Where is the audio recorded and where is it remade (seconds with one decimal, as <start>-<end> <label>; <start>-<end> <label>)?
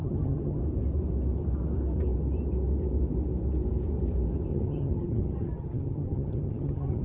0.0-0.6 remade; 0.6-4.5 recorded; 4.5-7.0 remade